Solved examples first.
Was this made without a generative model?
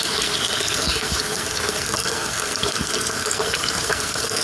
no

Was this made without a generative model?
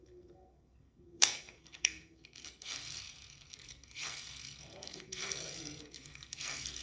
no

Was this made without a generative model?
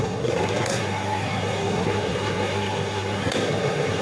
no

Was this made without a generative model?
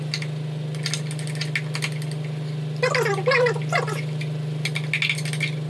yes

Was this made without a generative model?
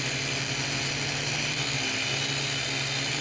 yes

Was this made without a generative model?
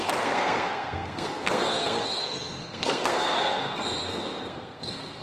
no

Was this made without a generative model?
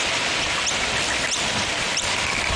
yes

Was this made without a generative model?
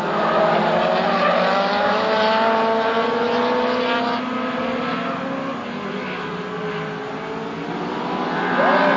yes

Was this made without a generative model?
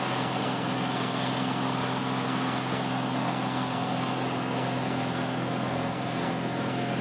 no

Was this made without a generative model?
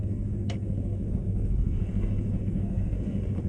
no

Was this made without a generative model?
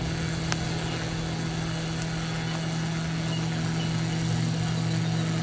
yes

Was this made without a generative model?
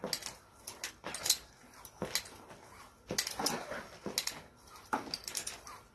yes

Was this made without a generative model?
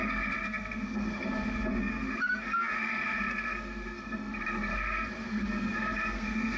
no